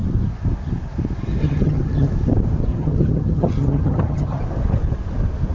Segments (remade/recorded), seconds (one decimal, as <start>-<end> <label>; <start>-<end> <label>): 0.0-1.4 recorded; 1.4-2.1 remade; 2.1-2.7 recorded; 2.7-4.4 remade; 4.4-5.5 recorded